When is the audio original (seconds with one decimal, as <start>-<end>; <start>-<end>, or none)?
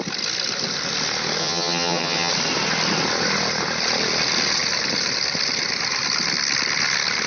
0.0-1.4; 2.3-7.3